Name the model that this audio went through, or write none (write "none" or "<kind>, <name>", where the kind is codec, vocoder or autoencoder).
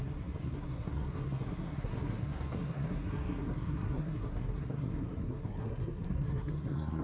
codec, SNAC